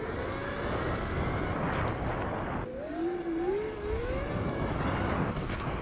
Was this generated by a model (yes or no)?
no